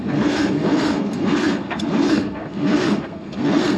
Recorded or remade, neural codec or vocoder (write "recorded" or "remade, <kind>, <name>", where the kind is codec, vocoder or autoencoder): remade, codec, SNAC